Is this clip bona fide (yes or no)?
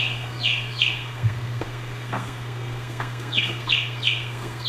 no